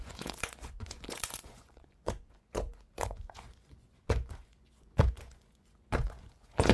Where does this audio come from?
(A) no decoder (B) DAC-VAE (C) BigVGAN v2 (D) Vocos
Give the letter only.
D